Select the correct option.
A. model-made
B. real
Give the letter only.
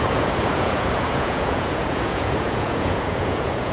A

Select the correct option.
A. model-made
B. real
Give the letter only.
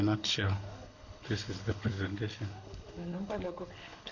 A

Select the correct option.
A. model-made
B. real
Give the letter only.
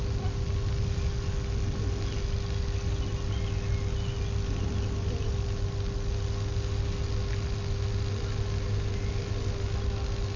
B